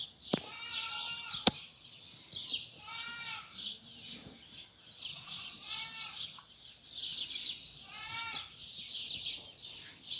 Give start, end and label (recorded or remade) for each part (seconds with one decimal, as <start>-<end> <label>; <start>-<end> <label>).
0.0-5.1 recorded; 5.1-5.8 remade; 5.8-10.2 recorded